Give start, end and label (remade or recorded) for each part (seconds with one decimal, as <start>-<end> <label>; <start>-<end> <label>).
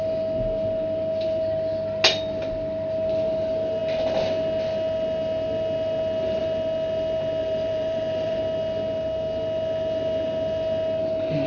0.0-7.4 recorded; 7.4-8.4 remade; 8.4-11.5 recorded